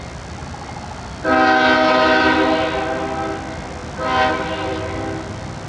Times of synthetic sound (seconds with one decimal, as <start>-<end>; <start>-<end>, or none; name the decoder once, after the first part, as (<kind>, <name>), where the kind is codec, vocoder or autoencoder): none